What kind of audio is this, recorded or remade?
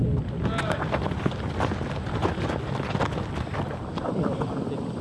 recorded